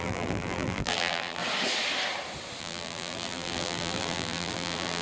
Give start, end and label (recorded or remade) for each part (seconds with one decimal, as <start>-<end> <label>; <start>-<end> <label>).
0.0-1.4 remade; 1.4-2.6 recorded; 2.6-5.0 remade